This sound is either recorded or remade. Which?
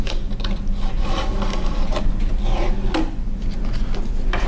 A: recorded